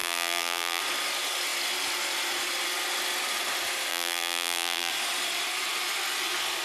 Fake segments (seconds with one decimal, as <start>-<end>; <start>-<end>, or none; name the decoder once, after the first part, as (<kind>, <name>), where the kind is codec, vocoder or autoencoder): 0.0-0.8 (vocoder, BigVGAN v2); 3.9-4.9